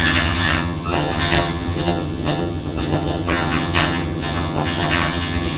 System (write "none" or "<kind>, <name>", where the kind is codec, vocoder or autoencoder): vocoder, HiFi-GAN